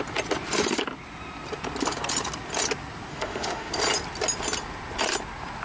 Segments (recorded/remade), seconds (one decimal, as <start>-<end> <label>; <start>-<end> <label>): 0.0-3.1 recorded; 3.1-3.7 remade; 3.7-5.6 recorded